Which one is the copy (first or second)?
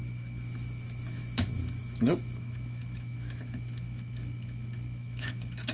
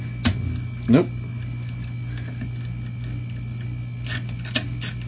first